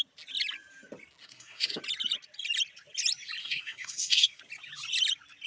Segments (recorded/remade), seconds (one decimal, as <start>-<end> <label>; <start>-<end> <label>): 0.0-1.2 recorded; 1.2-1.8 remade; 1.8-3.4 recorded; 3.4-4.4 remade; 4.4-5.5 recorded